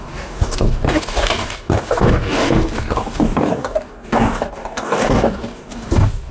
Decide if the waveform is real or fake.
fake